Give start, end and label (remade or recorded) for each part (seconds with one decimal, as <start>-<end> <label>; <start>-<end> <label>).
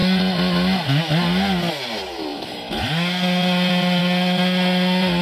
0.0-5.2 recorded